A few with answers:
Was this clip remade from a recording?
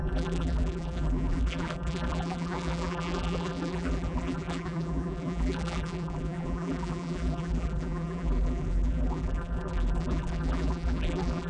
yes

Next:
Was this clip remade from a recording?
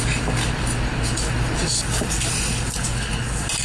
no